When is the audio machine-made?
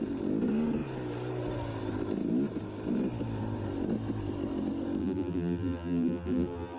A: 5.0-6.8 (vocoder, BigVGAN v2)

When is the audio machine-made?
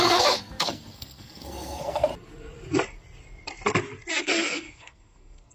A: 0.0-2.1 (codec, SNAC); 4.2-5.5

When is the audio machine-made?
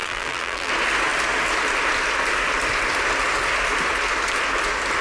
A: 0.0-0.7 (vocoder, BigVGAN v2)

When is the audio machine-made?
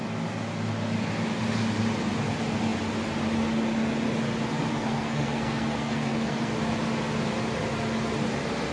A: 4.7-6.5 (codec, SNAC)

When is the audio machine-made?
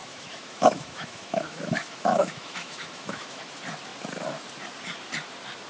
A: 0.0-3.4 (autoencoder, DAC-VAE)